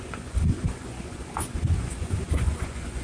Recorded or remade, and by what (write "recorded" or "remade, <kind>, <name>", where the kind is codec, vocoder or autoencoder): remade, vocoder, Vocos